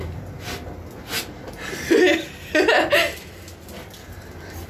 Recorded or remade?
recorded